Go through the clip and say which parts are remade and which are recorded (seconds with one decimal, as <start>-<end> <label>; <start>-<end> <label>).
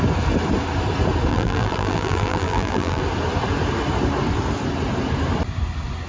0.0-1.3 recorded; 1.3-3.0 remade; 3.0-6.1 recorded